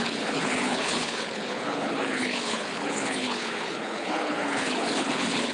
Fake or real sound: fake